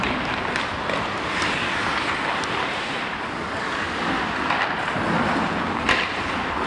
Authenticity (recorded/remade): recorded